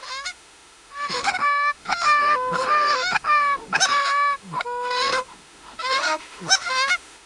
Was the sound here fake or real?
fake